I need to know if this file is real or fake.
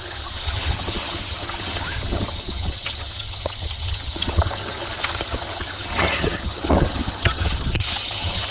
fake